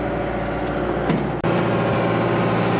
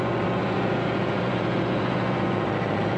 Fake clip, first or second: second